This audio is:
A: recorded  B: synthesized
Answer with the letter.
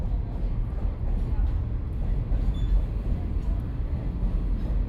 A